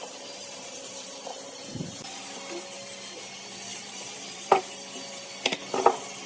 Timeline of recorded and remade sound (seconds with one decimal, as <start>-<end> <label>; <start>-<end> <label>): 0.0-2.1 remade; 2.1-3.7 recorded; 3.7-4.6 remade; 4.6-6.3 recorded